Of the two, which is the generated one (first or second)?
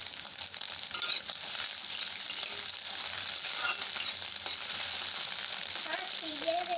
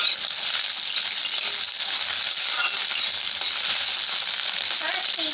first